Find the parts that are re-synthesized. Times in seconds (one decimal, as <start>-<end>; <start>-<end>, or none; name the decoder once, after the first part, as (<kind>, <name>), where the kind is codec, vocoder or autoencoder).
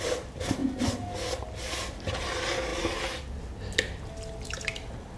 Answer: none